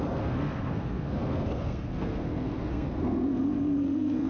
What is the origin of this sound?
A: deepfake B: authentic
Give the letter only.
A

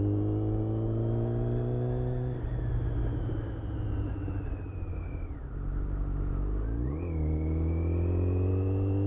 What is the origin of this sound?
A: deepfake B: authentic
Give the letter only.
B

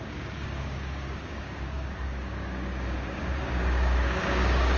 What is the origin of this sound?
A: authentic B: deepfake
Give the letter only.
B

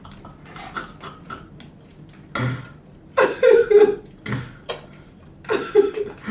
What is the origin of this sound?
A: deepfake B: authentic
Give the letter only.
B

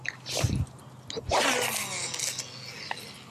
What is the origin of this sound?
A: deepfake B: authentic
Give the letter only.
B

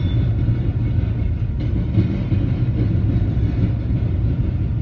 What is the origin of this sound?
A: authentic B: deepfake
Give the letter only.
A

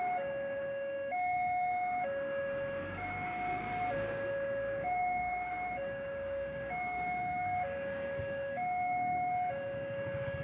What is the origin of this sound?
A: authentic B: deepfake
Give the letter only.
B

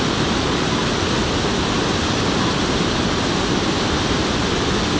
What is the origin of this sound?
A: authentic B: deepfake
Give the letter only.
A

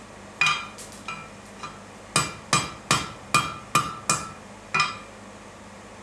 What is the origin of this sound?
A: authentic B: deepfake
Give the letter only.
A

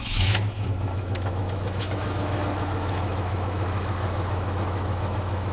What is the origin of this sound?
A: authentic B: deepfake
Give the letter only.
B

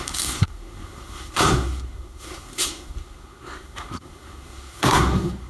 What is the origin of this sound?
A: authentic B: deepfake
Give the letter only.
B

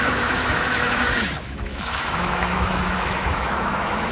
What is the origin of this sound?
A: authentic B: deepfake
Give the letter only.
B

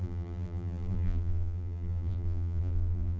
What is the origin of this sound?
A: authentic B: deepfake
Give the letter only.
B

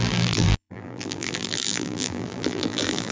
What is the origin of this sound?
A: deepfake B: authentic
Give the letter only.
A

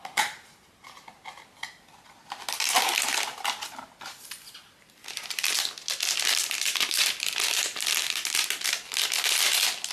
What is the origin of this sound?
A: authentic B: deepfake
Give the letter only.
A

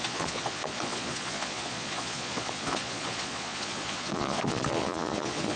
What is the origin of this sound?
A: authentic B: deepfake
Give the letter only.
B